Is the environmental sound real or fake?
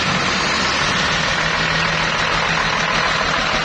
real